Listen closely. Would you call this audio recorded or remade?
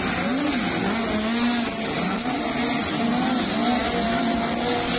recorded